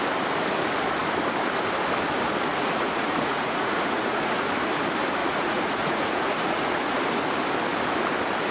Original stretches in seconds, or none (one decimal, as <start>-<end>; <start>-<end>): 0.0-2.5; 4.5-5.2; 7.0-8.5